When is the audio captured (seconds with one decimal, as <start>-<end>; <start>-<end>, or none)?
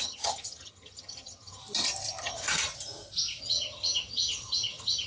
1.6-2.2; 2.7-3.4